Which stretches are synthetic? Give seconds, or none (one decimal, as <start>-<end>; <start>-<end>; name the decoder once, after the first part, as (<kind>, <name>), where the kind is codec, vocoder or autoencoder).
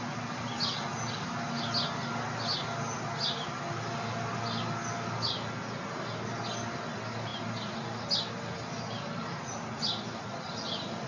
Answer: none